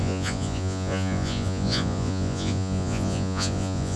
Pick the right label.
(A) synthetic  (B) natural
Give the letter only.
A